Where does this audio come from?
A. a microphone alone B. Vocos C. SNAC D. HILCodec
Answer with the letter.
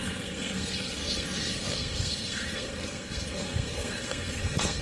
C